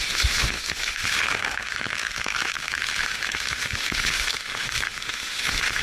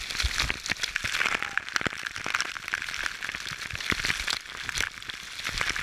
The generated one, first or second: first